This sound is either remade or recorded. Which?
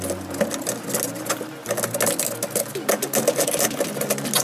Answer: recorded